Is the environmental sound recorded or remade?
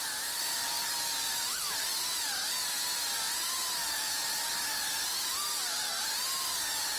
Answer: recorded